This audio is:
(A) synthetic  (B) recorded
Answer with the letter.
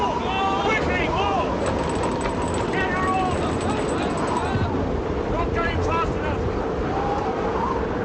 B